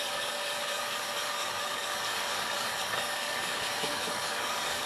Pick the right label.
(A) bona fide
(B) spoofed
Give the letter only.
B